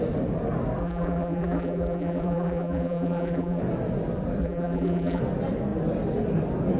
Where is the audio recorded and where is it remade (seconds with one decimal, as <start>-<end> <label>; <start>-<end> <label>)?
0.0-0.8 recorded; 0.8-3.6 remade; 3.6-4.4 recorded; 4.4-5.2 remade; 5.2-6.8 recorded